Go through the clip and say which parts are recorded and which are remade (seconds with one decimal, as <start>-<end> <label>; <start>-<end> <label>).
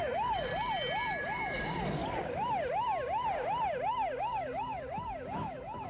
0.0-0.5 remade; 0.5-1.2 recorded; 1.2-2.0 remade; 2.0-4.2 recorded; 4.2-5.9 remade